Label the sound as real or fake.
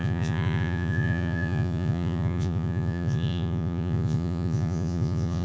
fake